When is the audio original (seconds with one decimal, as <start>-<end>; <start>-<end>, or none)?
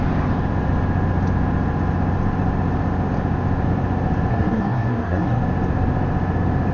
0.0-4.3; 5.4-6.7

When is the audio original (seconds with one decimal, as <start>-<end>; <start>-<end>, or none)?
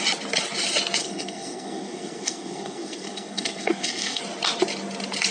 0.0-1.0; 4.2-5.3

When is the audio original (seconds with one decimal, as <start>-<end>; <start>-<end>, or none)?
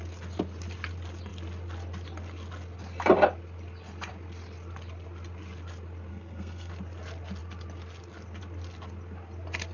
0.0-6.1; 6.7-9.7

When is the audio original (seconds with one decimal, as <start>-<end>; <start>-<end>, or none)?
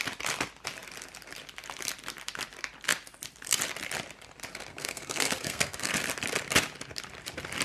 0.0-4.7; 5.9-7.6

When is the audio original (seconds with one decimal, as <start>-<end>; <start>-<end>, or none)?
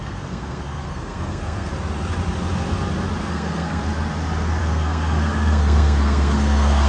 1.7-3.2; 3.8-4.6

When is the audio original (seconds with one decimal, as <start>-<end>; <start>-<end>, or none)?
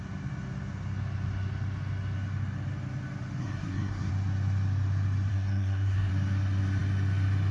0.0-3.4; 4.1-5.3; 6.1-7.5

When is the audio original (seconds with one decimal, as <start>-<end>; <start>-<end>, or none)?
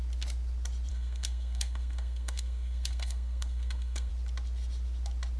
0.0-0.9; 4.1-5.4